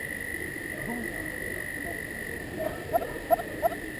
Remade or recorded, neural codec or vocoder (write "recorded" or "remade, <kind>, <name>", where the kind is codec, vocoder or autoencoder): recorded